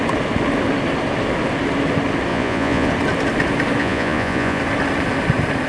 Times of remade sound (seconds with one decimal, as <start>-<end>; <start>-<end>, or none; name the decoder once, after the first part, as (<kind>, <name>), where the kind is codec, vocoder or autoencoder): 2.3-2.9 (vocoder, Vocos); 3.8-4.6